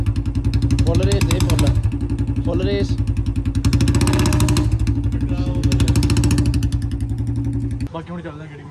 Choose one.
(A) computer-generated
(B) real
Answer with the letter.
B